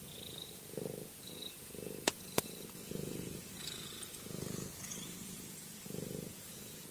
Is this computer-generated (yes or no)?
yes